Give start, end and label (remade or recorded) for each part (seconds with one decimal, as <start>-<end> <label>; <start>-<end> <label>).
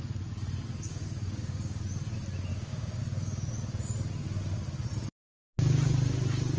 0.0-0.9 recorded; 0.9-1.8 remade; 1.8-2.5 recorded; 2.5-3.0 remade; 3.0-6.6 recorded